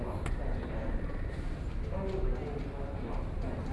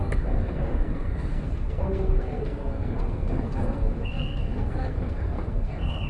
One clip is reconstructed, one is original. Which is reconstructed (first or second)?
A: second